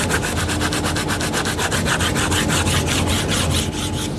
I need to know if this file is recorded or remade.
recorded